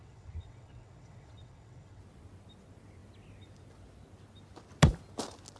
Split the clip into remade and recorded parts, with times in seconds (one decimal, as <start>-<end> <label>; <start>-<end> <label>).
0.0-2.0 remade; 2.0-5.6 recorded

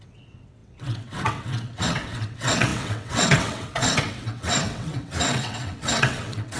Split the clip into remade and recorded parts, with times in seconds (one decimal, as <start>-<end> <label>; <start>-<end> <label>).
0.0-6.6 remade

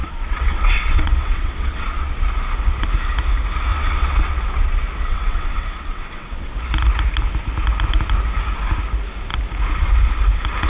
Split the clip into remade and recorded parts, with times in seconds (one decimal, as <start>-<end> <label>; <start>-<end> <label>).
0.0-2.1 remade; 2.1-3.7 recorded; 3.7-4.3 remade; 4.3-5.1 recorded; 5.1-6.5 remade; 6.5-10.7 recorded

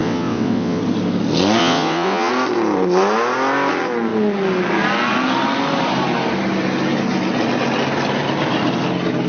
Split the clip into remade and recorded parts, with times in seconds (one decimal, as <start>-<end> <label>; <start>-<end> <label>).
0.0-0.8 remade; 0.8-1.6 recorded; 1.6-2.3 remade; 2.3-9.3 recorded

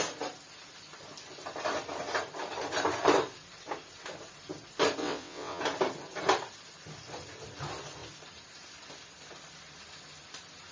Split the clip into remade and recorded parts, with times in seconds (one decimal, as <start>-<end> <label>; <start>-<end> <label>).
0.0-5.0 recorded; 5.0-5.6 remade; 5.6-10.7 recorded

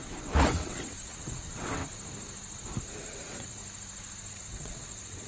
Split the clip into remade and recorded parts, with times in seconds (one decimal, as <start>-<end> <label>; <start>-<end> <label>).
0.0-1.8 remade; 1.8-2.9 recorded; 2.9-3.6 remade; 3.6-4.3 recorded; 4.3-5.3 remade

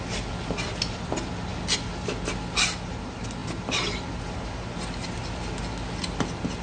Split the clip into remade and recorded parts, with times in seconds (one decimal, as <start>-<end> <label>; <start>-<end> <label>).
0.0-6.6 recorded

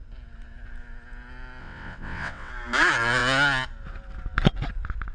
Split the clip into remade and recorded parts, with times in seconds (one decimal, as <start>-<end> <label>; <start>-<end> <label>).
0.0-1.6 recorded; 1.6-2.5 remade; 2.5-5.1 recorded